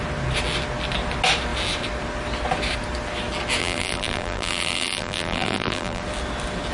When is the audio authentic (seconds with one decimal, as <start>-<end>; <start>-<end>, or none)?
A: 0.0-3.6; 6.0-6.7